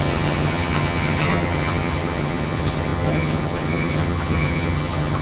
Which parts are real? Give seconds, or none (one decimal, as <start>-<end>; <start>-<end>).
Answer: none